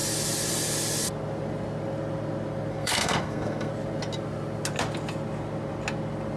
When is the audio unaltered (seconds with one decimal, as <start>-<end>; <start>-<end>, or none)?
0.0-2.7; 3.7-6.4